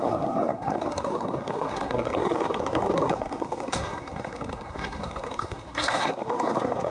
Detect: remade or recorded remade